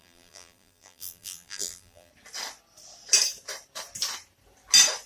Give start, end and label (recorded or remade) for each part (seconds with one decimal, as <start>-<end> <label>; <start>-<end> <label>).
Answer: 0.0-2.1 remade; 2.1-5.1 recorded